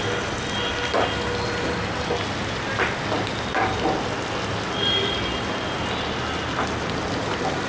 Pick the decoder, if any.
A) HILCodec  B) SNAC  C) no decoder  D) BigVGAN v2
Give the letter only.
C